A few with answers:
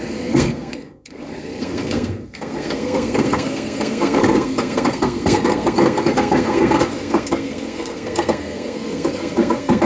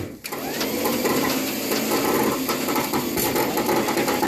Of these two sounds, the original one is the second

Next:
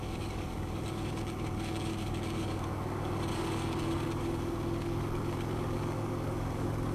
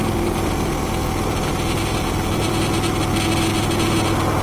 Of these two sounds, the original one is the second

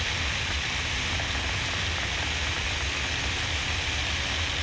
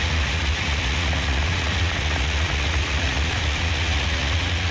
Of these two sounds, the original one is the first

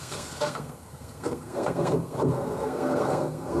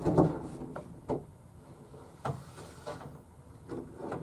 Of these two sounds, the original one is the second